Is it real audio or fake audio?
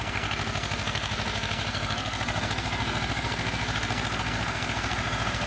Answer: fake